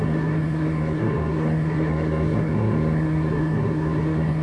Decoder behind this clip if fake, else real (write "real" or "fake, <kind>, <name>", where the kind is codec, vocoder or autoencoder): fake, codec, SNAC